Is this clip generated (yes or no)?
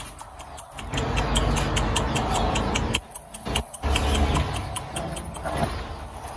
no